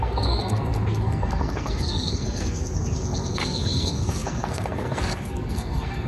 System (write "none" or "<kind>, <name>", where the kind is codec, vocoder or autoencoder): codec, SNAC